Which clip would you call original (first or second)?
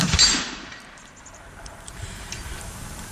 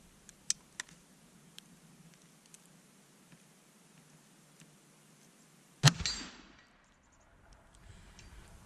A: second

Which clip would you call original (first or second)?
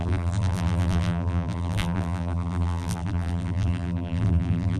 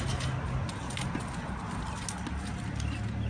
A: second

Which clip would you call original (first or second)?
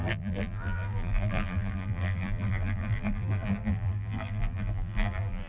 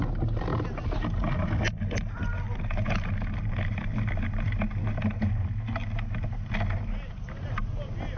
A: second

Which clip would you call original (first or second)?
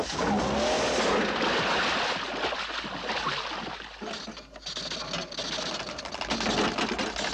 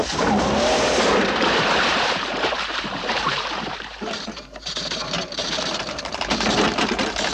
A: first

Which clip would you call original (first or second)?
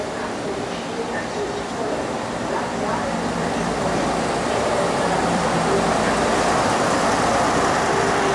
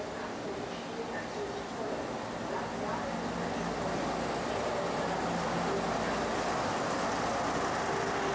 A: second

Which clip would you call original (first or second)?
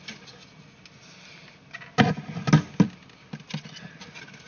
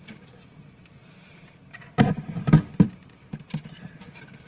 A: first